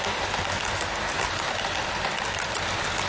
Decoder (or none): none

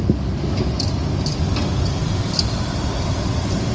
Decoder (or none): none